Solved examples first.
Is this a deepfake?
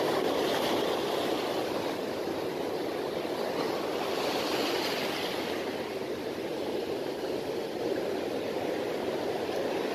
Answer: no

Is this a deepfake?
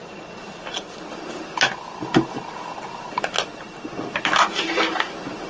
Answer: no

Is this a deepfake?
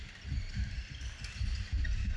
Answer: no